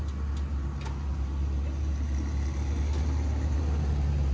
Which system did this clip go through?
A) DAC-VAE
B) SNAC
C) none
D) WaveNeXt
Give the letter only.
C